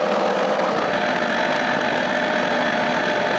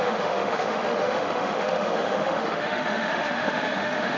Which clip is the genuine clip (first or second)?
first